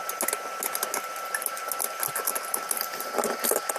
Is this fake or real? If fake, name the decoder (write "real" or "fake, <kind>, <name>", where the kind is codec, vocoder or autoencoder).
real